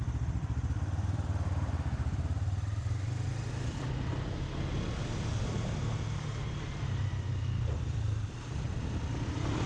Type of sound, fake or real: fake